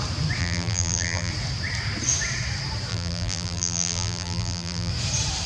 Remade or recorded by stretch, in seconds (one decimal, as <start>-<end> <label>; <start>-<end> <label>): 0.0-0.4 recorded; 0.4-1.3 remade; 1.3-2.9 recorded; 2.9-4.9 remade; 4.9-5.5 recorded